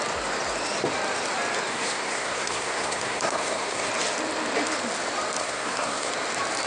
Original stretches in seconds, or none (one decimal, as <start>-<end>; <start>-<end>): 0.0-1.7; 3.9-5.4; 6.1-6.7